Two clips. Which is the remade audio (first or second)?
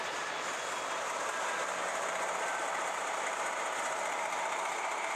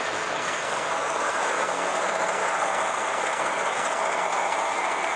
second